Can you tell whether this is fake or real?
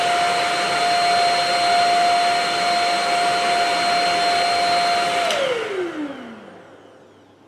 real